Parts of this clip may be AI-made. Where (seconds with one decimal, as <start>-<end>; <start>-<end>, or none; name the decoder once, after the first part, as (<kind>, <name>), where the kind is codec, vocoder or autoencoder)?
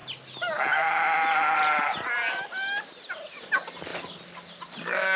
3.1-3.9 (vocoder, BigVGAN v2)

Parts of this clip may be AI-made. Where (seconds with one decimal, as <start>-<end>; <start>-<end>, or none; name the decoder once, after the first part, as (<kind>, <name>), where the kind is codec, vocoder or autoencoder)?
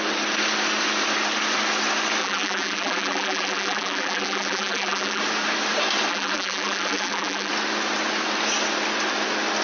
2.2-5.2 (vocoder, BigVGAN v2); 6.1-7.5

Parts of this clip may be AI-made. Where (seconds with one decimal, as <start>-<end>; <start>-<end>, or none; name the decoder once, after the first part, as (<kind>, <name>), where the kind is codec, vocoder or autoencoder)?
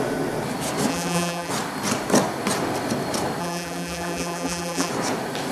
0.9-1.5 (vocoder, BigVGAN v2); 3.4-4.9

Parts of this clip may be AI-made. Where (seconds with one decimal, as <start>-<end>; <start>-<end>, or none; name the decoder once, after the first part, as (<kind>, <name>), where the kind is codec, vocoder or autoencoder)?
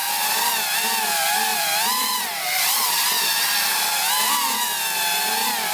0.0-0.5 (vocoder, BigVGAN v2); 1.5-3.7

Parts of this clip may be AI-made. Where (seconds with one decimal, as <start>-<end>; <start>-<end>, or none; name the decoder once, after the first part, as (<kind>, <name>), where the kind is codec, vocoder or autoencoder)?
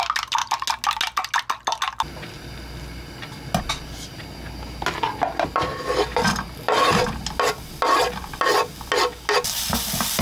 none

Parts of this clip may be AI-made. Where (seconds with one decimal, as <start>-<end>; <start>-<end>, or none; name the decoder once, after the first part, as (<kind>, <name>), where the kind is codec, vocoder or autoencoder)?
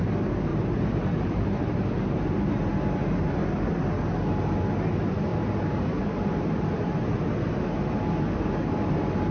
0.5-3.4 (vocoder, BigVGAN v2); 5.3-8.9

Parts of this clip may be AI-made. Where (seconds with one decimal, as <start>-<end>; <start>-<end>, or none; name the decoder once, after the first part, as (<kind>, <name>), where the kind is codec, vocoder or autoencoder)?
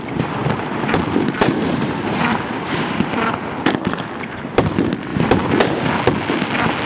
0.4-4.5 (vocoder, BigVGAN v2)